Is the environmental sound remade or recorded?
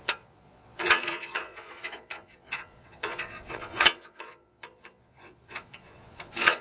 remade